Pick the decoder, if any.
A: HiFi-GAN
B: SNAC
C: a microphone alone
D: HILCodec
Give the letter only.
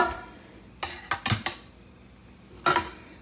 C